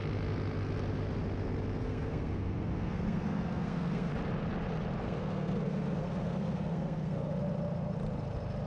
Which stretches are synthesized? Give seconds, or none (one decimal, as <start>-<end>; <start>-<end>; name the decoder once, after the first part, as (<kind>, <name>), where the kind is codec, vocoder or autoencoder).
1.8-4.1 (codec, SNAC); 5.0-7.3